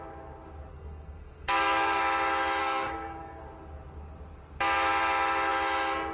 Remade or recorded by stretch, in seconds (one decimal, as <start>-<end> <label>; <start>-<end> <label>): 0.0-0.7 recorded; 0.7-2.0 remade; 2.0-2.6 recorded; 2.6-3.4 remade; 3.4-6.1 recorded

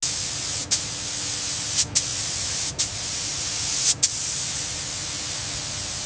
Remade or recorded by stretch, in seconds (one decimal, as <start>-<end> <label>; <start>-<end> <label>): 0.0-6.1 recorded